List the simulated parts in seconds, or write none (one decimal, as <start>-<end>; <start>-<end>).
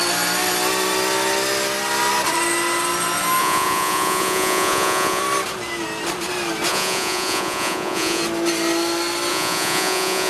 3.4-5.2; 6.7-8.2; 9.3-10.3